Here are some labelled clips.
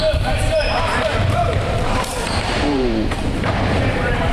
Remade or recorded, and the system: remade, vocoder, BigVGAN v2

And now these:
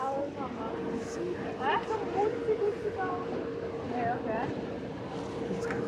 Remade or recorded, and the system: remade, vocoder, BigVGAN v2